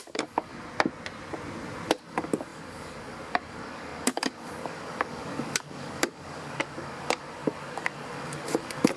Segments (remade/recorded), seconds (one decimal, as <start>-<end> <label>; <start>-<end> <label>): 0.0-0.5 remade; 0.5-1.9 recorded; 1.9-9.0 remade

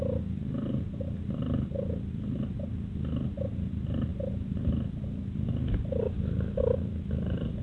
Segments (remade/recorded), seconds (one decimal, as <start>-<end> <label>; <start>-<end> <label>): 0.0-7.6 recorded

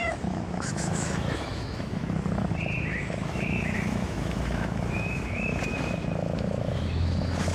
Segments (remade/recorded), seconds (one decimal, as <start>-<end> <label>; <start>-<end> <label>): 0.0-2.0 remade; 2.0-2.8 recorded; 2.8-7.5 remade

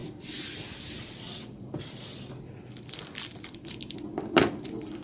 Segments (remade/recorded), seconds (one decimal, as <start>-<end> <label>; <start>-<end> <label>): 0.0-5.0 remade

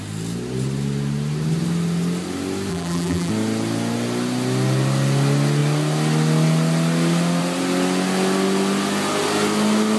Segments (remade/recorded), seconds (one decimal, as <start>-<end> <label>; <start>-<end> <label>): 0.0-2.7 recorded; 2.7-3.3 remade; 3.3-10.0 recorded

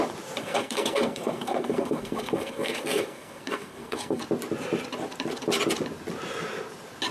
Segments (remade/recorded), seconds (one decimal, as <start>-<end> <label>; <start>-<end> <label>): 0.0-0.4 recorded; 0.4-4.2 remade; 4.2-7.1 recorded

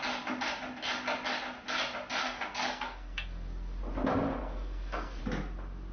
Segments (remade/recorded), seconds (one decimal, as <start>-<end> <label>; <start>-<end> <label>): 0.0-2.2 recorded; 2.2-3.8 remade; 3.8-4.4 recorded; 4.4-5.2 remade; 5.2-5.9 recorded

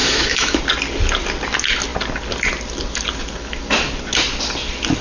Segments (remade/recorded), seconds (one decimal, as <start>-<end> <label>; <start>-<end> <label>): 0.0-0.6 remade; 0.6-5.0 recorded